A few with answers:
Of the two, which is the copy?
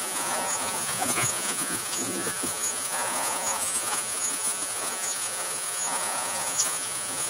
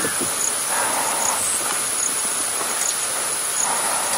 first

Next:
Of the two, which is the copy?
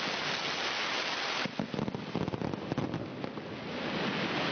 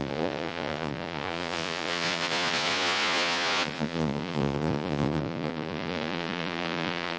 second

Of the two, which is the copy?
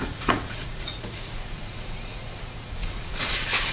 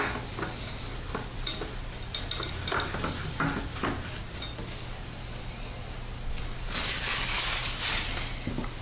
first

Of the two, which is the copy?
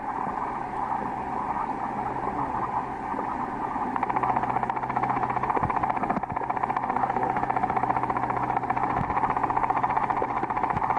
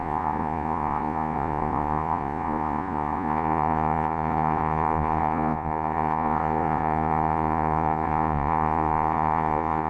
second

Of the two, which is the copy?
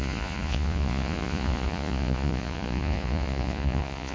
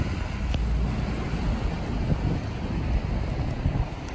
first